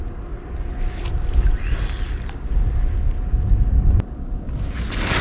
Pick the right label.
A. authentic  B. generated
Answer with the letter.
A